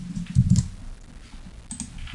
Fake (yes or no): no